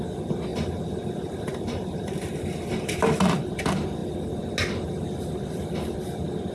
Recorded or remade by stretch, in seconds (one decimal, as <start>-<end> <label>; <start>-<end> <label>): 0.0-0.5 recorded; 0.5-3.5 remade; 3.5-6.5 recorded

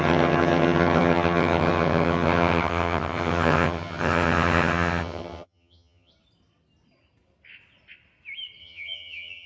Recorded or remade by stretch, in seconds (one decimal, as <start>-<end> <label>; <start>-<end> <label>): 0.0-6.1 remade; 6.1-8.6 recorded; 8.6-9.5 remade

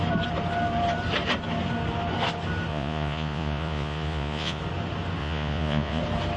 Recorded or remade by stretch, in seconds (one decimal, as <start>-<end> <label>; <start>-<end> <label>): 0.0-2.7 recorded; 2.7-4.6 remade; 4.6-5.2 recorded; 5.2-6.0 remade; 6.0-6.4 recorded

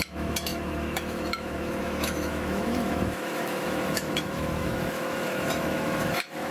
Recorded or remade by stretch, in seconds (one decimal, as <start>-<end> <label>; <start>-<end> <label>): 0.0-6.5 remade

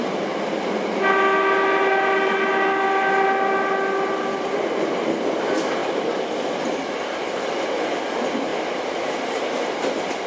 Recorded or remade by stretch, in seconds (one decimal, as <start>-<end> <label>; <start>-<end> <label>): 0.0-10.3 recorded

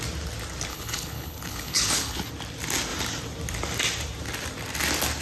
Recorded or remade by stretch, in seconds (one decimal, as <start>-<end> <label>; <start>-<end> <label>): 0.0-0.7 recorded; 0.7-2.3 remade; 2.3-5.2 recorded

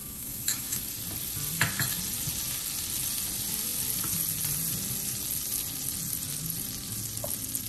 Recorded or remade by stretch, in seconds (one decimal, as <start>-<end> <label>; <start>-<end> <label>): 0.0-0.8 remade; 0.8-7.7 recorded

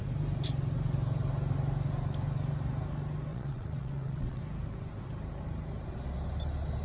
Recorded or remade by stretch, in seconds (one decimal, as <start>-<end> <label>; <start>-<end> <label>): 0.0-3.3 recorded; 3.3-4.4 remade; 4.4-6.8 recorded